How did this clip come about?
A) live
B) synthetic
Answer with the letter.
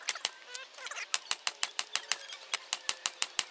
A